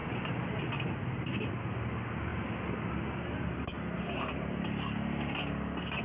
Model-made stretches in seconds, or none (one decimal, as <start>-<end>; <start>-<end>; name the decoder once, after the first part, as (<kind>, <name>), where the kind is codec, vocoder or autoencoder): none